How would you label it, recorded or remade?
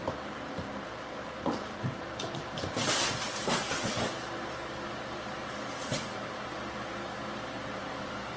remade